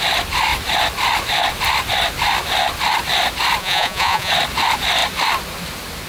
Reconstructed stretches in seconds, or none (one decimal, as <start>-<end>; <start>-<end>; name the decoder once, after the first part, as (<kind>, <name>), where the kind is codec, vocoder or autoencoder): 3.6-4.3 (vocoder, Vocos)